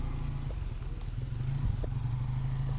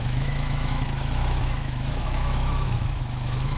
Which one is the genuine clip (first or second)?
first